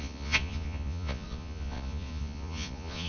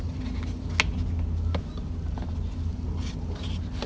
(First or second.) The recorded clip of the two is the second